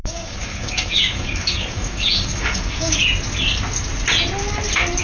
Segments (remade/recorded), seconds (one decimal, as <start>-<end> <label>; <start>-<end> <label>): 0.0-3.0 remade; 3.0-5.0 recorded